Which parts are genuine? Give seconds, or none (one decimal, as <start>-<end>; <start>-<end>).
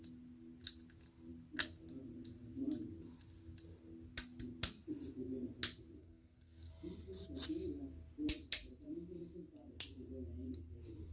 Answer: 0.0-6.0; 6.7-11.1